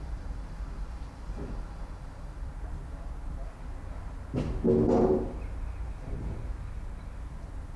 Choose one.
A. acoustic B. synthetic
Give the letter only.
A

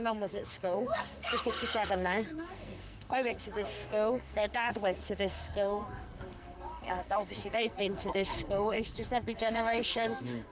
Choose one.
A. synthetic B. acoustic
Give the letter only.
A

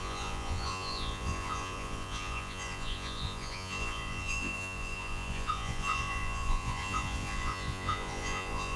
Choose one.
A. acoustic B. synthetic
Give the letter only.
B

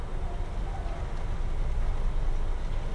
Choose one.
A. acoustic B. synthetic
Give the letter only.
A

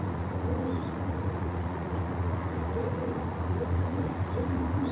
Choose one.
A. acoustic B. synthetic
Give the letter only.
B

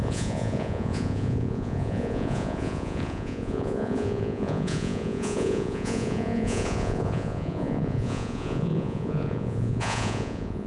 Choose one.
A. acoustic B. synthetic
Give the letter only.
B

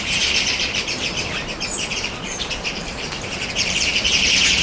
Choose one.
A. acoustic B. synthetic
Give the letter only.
B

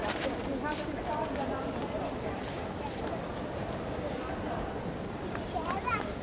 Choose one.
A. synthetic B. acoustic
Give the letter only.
A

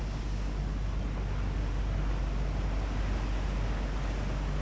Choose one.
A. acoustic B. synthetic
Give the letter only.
A